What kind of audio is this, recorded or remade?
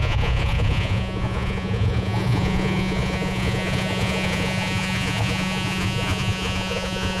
remade